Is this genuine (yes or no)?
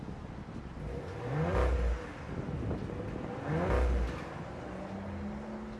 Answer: yes